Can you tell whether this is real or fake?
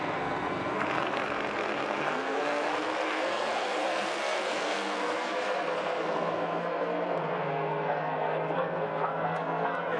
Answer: fake